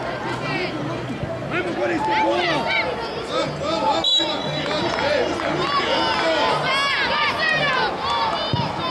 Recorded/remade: recorded